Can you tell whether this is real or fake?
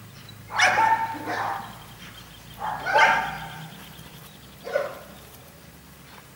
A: real